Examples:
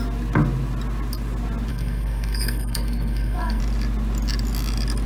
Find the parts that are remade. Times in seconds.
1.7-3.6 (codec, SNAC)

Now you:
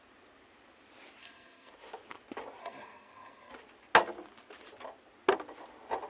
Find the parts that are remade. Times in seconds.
1.2-1.7 (codec, SNAC); 2.6-3.5

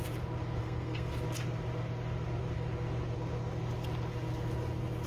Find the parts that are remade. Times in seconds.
0.6-1.1 (codec, SNAC)